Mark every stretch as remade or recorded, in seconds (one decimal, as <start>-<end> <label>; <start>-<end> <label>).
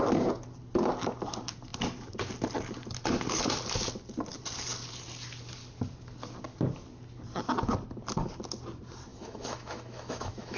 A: 0.0-9.1 recorded; 9.1-10.6 remade